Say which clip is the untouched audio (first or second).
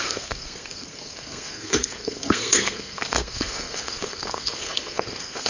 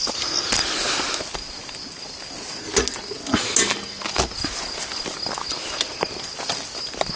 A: second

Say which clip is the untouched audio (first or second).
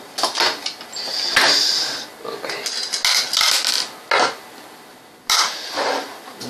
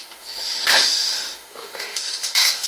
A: first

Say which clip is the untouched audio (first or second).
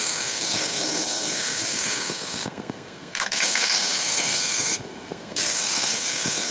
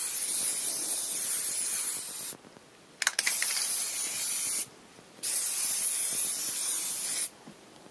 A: second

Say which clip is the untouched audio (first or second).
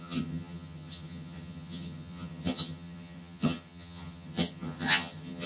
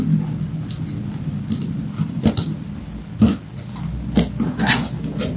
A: second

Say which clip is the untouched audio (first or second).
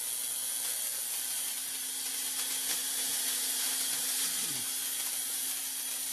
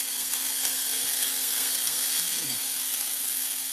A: first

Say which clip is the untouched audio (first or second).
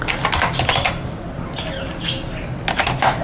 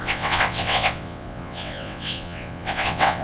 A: first